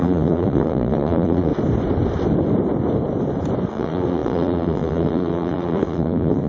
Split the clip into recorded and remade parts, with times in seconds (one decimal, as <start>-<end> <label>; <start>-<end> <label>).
0.0-1.5 remade; 1.5-3.7 recorded; 3.7-6.5 remade